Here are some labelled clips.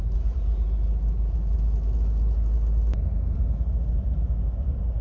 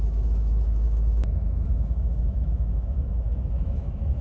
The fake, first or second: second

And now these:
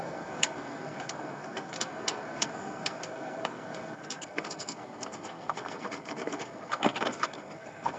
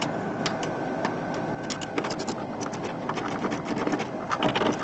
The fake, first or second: first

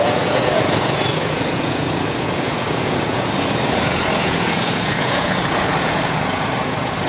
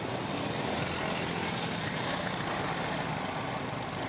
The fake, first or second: first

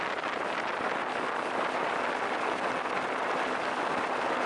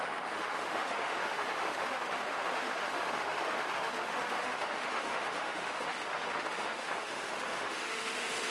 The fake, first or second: second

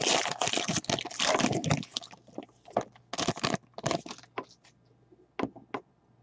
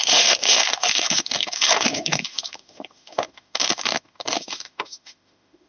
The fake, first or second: second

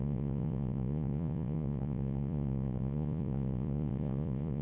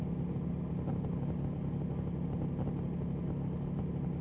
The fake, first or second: first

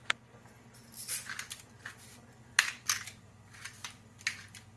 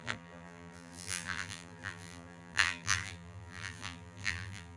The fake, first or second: second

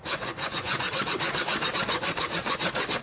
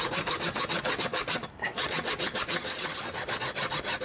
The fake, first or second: first